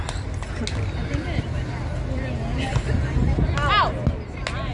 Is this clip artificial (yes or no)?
no